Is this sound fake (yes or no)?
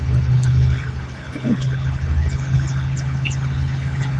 yes